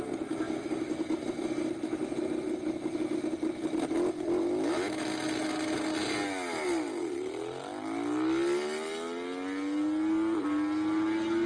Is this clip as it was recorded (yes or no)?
yes